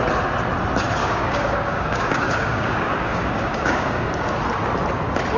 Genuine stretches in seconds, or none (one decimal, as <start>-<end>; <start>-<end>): 0.0-1.0; 4.2-5.4